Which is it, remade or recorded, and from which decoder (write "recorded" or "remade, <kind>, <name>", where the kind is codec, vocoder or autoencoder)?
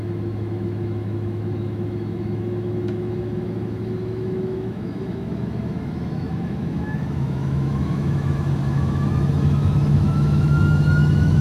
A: remade, autoencoder, DAC-VAE